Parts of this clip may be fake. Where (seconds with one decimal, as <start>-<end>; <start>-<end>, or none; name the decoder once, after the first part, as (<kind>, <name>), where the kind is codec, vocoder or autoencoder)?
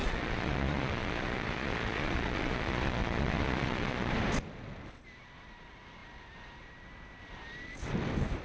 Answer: 0.0-4.1 (vocoder, Vocos)